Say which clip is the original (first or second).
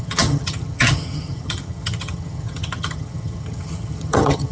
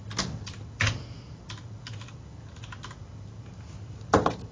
second